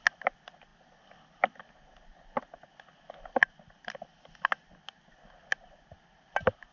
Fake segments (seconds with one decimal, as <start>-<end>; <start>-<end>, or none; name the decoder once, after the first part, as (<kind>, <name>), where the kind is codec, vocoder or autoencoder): none